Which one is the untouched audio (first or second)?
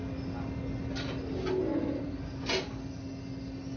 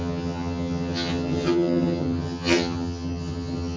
first